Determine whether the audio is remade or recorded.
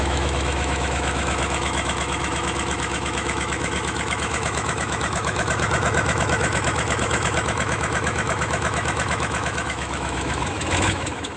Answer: remade